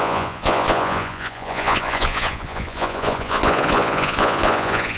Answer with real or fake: fake